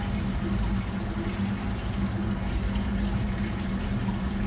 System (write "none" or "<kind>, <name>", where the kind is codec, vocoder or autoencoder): none